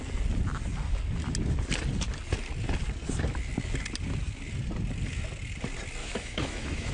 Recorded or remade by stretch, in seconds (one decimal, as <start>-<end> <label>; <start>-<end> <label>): 0.0-6.0 recorded; 6.0-6.9 remade